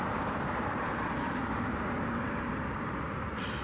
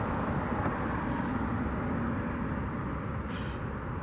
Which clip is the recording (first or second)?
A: second